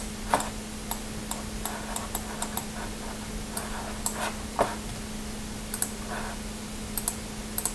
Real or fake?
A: real